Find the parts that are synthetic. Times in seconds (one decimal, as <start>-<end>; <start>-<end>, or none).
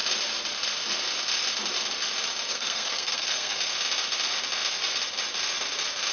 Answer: 2.5-3.6